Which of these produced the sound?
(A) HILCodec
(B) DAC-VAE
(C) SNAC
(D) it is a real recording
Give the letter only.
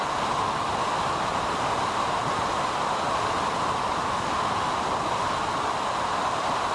D